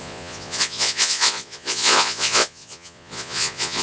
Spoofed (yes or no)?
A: yes